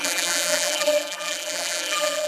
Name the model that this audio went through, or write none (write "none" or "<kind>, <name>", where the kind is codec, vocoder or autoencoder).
vocoder, BigVGAN v2